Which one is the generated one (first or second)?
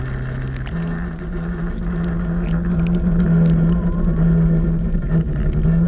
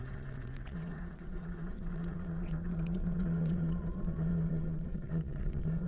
second